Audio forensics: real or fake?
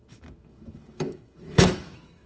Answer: fake